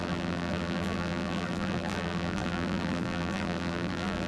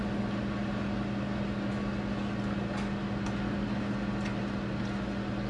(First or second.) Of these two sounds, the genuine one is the second